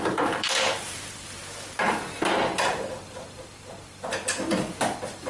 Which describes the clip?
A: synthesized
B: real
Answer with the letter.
A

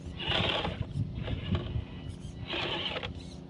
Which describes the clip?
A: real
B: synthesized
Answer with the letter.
A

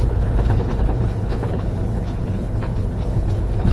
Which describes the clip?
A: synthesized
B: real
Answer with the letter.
A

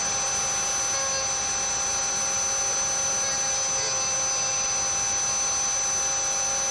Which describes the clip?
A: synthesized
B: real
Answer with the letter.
B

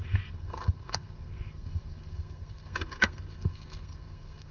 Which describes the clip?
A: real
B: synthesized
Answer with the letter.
B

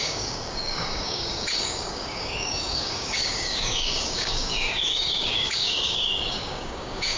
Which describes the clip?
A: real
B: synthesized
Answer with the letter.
B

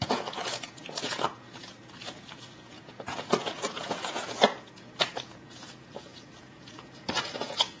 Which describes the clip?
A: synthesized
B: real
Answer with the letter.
A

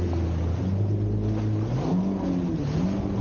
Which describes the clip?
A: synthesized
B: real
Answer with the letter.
B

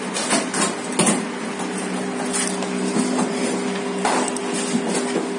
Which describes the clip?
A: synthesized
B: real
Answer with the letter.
B